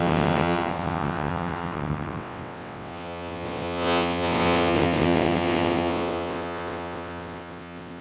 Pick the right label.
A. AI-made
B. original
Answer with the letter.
A